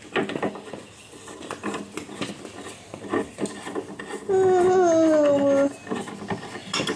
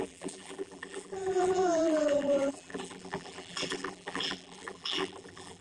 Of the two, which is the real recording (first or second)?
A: first